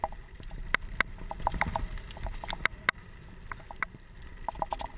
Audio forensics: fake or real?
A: real